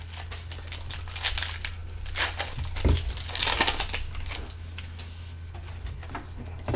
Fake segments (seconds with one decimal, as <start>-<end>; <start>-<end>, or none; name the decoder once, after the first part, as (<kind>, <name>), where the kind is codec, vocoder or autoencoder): none